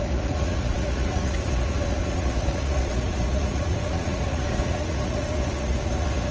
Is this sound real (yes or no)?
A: no